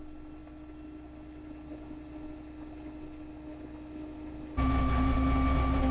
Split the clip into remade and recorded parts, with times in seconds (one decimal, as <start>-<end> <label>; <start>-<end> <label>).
0.0-5.9 recorded